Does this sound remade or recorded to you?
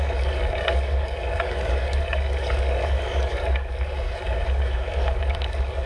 remade